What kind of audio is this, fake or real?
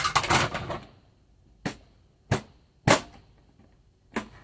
real